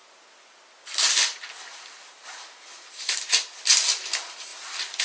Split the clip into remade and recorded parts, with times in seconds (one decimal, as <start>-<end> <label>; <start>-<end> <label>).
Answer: 0.0-5.0 recorded